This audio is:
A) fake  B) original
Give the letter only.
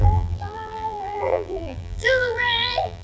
A